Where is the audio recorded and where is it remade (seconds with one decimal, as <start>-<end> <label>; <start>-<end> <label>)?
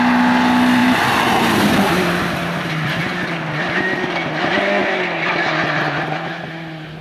0.0-0.8 recorded; 0.8-3.3 remade; 3.3-7.0 recorded